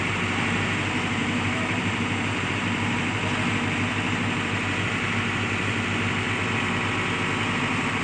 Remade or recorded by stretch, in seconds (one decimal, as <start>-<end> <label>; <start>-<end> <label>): 0.0-1.2 recorded; 1.2-2.5 remade; 2.5-8.0 recorded